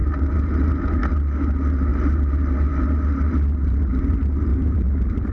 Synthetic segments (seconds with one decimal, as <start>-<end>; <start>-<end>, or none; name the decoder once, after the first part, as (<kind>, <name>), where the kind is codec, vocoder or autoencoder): 0.0-0.7 (vocoder, BigVGAN v2); 4.5-5.3